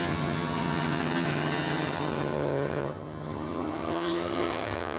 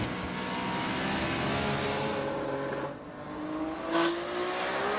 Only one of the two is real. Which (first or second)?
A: second